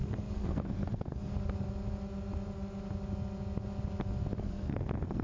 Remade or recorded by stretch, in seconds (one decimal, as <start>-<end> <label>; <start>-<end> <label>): 0.0-1.3 remade; 1.3-4.4 recorded; 4.4-5.2 remade